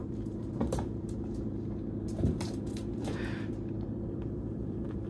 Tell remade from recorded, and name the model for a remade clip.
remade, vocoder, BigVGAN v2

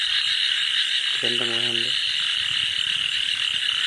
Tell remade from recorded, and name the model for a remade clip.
recorded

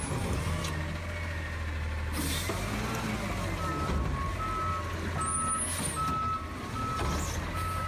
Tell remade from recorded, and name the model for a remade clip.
recorded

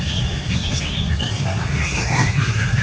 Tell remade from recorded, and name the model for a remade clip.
remade, codec, SNAC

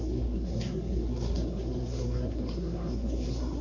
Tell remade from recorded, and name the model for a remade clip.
remade, codec, SNAC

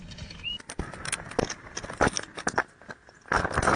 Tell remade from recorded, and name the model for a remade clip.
recorded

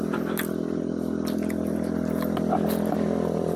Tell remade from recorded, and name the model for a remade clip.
recorded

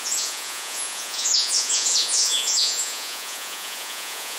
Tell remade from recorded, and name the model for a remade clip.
remade, vocoder, Vocos